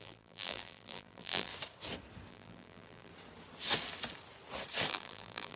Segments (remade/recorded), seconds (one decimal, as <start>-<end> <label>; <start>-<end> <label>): 0.0-1.5 remade; 1.5-2.3 recorded; 2.3-3.1 remade; 3.1-4.9 recorded; 4.9-5.6 remade

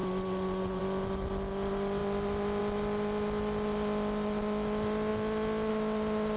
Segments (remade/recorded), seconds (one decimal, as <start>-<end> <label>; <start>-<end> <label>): 0.0-0.8 remade; 0.8-6.4 recorded